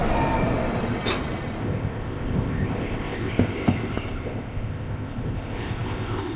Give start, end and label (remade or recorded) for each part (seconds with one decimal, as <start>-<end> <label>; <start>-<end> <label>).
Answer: 0.0-1.6 recorded; 1.6-6.4 remade